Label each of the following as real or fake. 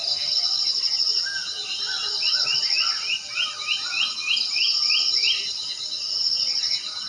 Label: real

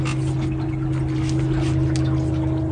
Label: real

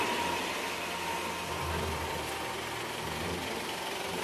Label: real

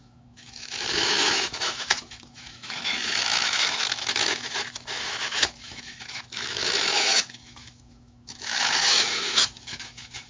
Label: fake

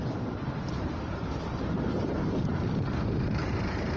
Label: fake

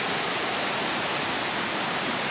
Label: real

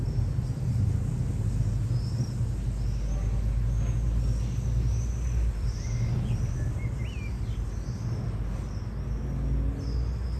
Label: real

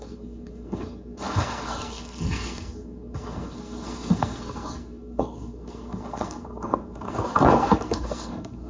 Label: fake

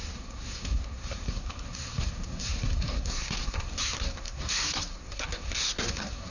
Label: fake